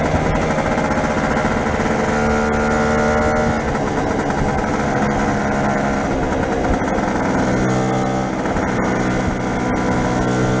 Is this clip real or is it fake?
real